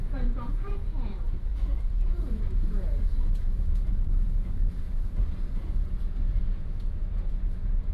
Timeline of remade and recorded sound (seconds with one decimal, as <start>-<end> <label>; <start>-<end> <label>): 0.0-7.9 remade